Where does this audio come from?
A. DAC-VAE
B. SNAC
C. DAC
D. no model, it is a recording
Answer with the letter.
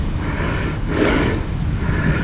C